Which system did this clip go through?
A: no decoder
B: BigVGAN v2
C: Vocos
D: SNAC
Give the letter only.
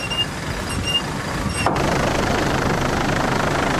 A